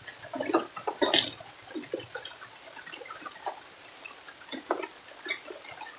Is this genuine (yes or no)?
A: yes